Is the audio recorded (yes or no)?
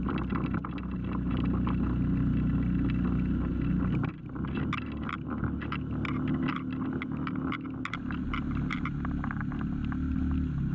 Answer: yes